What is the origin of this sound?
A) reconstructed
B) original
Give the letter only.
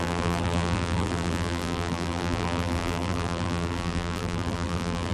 A